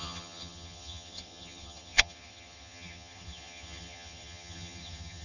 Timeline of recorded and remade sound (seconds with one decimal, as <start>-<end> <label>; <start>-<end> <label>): 0.0-5.2 remade